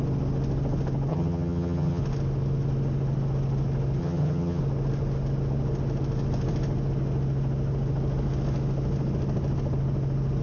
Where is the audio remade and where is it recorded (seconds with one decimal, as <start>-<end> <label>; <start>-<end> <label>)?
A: 0.0-1.1 recorded; 1.1-2.0 remade; 2.0-4.0 recorded; 4.0-4.6 remade; 4.6-10.4 recorded